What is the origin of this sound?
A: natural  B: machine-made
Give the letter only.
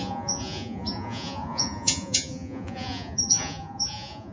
B